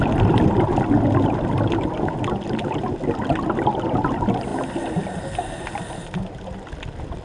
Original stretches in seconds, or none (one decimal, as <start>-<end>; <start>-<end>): 0.0-7.2